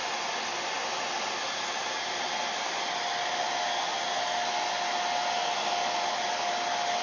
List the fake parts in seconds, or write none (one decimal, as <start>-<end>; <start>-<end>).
none

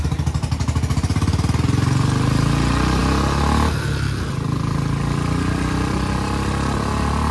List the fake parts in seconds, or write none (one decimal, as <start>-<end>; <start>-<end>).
none

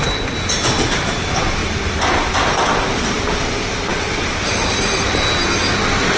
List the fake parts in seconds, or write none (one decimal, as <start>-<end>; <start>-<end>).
1.6-2.3; 3.9-5.3

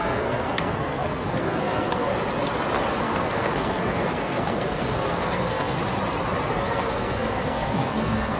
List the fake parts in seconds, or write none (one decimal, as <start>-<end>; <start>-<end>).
0.0-2.1; 2.9-5.8; 6.5-8.4

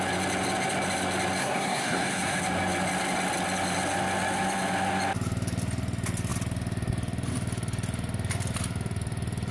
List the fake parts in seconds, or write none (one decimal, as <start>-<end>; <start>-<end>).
1.4-2.4

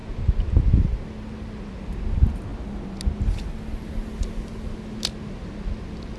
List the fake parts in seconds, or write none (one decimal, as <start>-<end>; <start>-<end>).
none

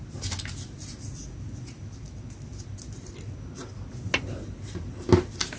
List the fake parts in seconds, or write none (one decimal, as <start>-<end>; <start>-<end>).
none